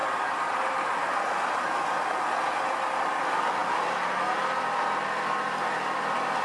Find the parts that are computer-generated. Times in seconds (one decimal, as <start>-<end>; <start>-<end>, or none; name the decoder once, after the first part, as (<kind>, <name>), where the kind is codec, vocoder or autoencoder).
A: none